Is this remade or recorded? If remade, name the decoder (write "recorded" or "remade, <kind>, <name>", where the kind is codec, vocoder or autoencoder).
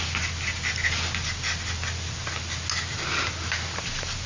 recorded